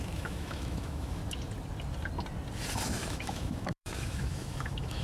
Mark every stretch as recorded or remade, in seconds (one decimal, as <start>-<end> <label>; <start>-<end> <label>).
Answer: 0.0-1.2 remade; 1.2-3.1 recorded; 3.1-5.0 remade